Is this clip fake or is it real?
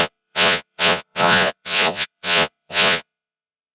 fake